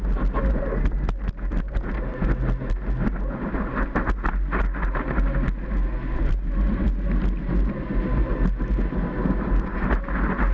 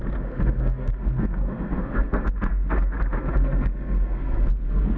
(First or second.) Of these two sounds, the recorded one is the first